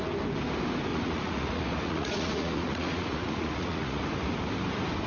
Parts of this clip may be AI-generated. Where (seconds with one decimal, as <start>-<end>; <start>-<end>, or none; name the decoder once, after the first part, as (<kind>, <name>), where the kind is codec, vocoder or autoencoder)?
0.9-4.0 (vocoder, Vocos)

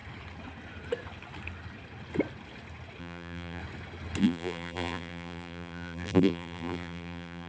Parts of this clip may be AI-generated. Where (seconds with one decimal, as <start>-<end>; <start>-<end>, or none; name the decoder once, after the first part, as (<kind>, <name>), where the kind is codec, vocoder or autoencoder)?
3.0-3.6 (vocoder, BigVGAN v2); 4.2-7.5

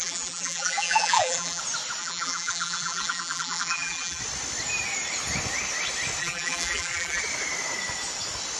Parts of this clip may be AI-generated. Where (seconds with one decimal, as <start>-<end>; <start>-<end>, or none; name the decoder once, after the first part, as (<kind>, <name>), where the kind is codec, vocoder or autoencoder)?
0.0-1.6 (vocoder, BigVGAN v2); 2.0-4.2; 6.2-7.2

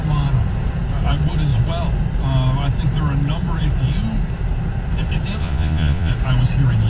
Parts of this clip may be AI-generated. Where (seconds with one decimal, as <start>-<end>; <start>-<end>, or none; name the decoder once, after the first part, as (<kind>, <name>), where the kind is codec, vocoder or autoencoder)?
5.4-6.1 (vocoder, Vocos)

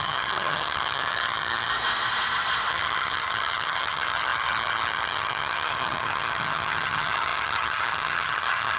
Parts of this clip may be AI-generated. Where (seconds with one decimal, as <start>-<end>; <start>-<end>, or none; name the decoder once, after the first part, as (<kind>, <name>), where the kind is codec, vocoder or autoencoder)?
0.0-1.7 (vocoder, HiFi-GAN); 2.7-8.8

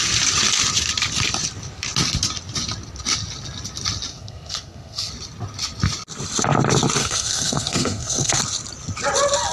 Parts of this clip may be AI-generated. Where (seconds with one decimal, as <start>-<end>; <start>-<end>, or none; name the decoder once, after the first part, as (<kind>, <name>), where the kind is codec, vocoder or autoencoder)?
4.1-5.1 (codec, SNAC); 7.0-8.4

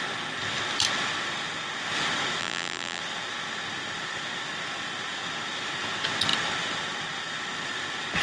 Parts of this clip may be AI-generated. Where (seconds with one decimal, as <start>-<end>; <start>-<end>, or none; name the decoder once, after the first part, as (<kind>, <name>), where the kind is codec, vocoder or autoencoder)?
2.4-3.0 (vocoder, BigVGAN v2)

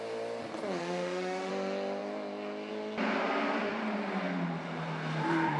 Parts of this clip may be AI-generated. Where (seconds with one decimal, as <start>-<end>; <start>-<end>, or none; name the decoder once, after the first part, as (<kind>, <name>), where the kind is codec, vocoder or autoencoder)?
0.8-1.5 (autoencoder, DAC-VAE)